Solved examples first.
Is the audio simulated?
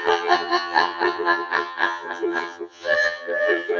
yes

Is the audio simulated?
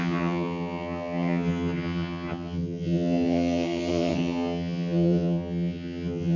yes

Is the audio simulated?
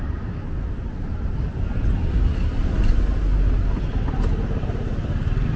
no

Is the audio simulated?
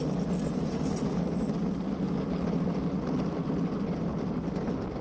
no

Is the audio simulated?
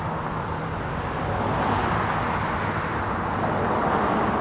no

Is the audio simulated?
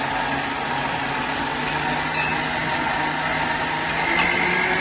no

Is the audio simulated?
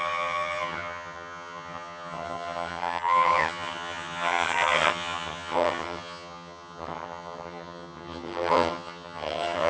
yes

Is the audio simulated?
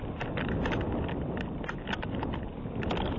no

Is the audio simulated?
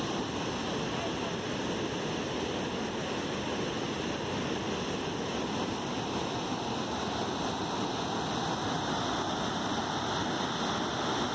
no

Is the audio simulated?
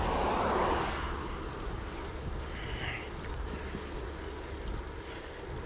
no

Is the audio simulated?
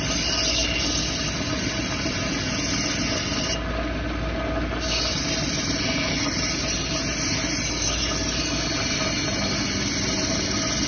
no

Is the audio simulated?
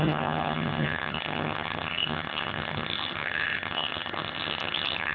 yes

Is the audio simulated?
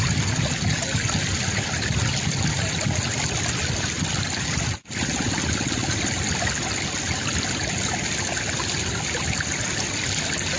no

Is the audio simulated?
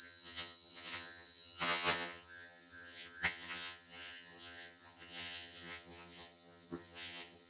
yes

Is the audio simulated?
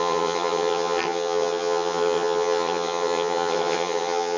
yes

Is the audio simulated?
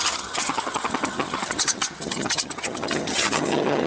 yes